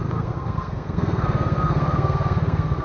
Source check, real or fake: fake